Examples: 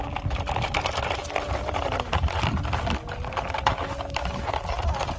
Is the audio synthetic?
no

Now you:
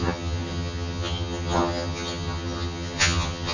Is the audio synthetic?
yes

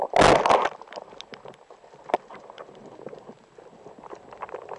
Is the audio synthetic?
no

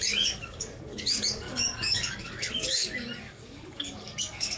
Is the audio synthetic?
yes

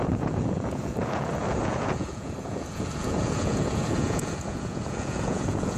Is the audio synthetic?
yes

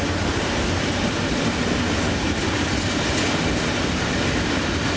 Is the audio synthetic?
no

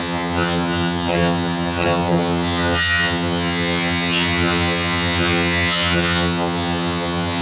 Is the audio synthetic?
yes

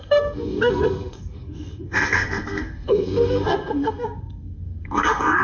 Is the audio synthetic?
yes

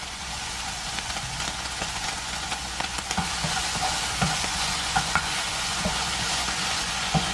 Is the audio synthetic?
yes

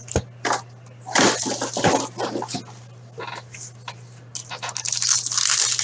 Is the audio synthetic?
no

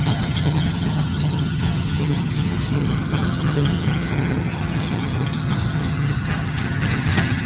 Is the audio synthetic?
yes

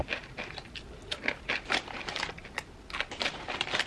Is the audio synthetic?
no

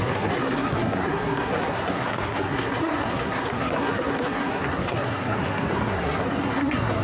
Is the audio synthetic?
yes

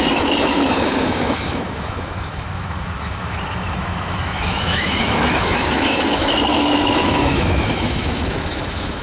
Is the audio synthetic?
yes